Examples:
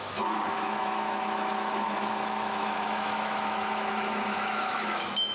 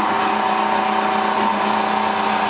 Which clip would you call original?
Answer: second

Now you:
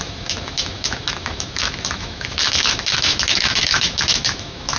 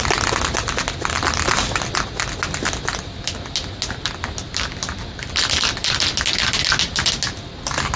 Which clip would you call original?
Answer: second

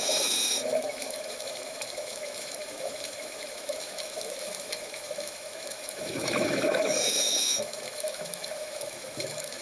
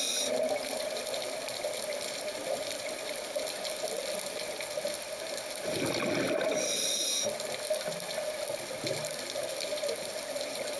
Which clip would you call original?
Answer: second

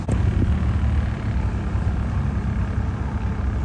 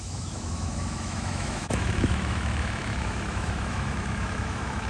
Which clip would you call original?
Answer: first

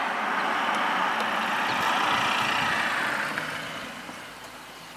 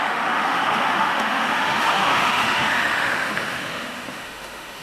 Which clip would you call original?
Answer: first